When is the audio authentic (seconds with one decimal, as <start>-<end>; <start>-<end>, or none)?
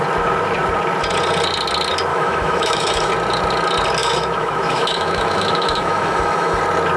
0.0-2.1; 3.1-4.0; 6.6-7.0